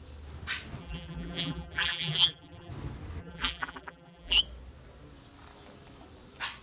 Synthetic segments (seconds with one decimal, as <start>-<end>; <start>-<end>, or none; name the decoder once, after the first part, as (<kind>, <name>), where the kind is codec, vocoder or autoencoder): 0.8-2.7 (vocoder, BigVGAN v2); 3.2-4.4